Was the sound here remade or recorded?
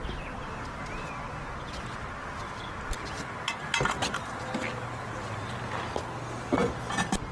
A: recorded